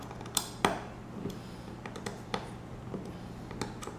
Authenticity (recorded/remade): recorded